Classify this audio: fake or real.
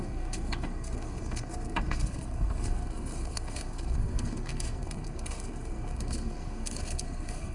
fake